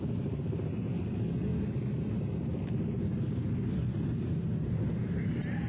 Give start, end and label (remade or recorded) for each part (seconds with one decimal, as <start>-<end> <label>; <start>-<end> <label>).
0.0-5.7 recorded